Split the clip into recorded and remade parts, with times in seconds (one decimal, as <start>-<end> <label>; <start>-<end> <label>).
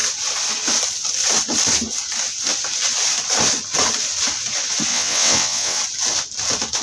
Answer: 0.0-4.9 recorded; 4.9-5.8 remade; 5.8-6.8 recorded